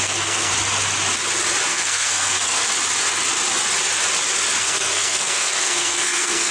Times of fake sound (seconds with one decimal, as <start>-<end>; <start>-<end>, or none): 0.0-0.5; 1.7-2.6; 4.6-6.5

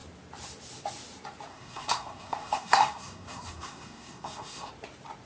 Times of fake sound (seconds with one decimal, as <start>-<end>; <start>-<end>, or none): 1.5-4.7

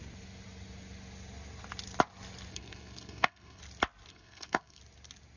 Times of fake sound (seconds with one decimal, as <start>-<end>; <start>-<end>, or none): 2.5-3.6; 4.1-4.8

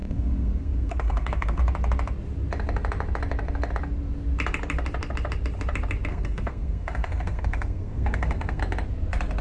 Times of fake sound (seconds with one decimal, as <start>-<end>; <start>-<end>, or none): 0.0-1.6; 6.1-8.6

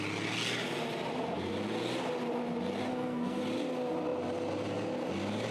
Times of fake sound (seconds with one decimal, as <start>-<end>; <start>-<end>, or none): 2.9-3.4

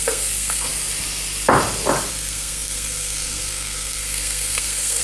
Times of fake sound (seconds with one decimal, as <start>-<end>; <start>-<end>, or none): 0.0-0.7; 2.1-5.0

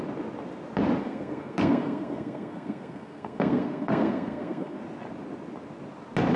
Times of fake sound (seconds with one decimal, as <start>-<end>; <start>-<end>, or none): 1.0-4.8